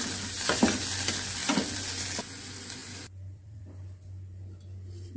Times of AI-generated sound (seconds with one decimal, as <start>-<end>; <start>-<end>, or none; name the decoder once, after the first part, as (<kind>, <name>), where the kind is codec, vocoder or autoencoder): 1.4-2.0 (vocoder, BigVGAN v2); 2.8-3.6